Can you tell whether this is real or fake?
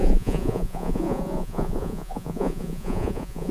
fake